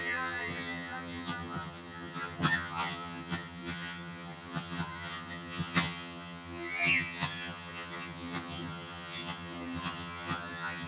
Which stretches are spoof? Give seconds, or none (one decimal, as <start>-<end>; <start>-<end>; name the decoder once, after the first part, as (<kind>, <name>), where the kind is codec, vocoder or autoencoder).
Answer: 0.0-10.9 (vocoder, HiFi-GAN)